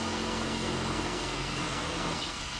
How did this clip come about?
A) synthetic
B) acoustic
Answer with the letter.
A